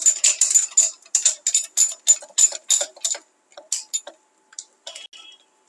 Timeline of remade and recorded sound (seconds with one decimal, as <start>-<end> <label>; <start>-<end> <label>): 0.0-5.7 recorded